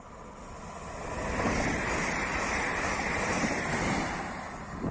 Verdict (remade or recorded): recorded